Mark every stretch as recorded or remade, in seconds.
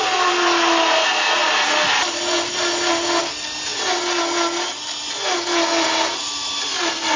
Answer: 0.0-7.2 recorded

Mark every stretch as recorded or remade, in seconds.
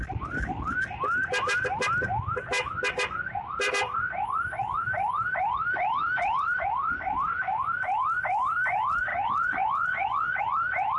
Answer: 0.0-9.1 recorded; 9.1-10.4 remade; 10.4-11.0 recorded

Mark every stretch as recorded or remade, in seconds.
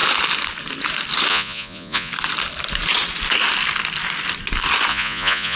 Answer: 0.0-1.3 recorded; 1.3-2.1 remade; 2.1-4.9 recorded; 4.9-5.6 remade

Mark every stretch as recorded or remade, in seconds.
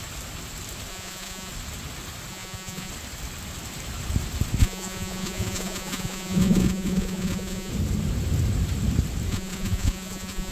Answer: 0.0-0.9 recorded; 0.9-1.5 remade; 1.5-2.3 recorded; 2.3-2.9 remade; 2.9-4.6 recorded; 4.6-7.7 remade; 7.7-9.3 recorded; 9.3-10.5 remade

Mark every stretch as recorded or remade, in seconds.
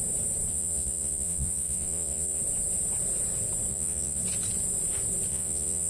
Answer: 0.0-0.5 recorded; 0.5-2.4 remade; 2.4-3.7 recorded; 3.7-4.2 remade; 4.2-5.3 recorded; 5.3-5.9 remade